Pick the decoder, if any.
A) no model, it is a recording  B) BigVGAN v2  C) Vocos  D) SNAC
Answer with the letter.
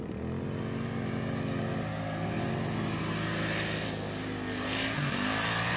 A